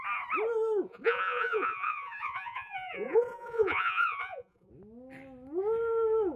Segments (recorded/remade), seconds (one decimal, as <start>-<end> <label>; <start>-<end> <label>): 0.0-0.9 recorded; 0.9-4.7 remade; 4.7-6.4 recorded